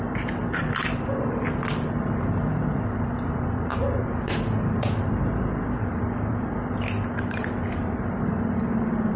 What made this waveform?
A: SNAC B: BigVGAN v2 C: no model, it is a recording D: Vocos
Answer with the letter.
B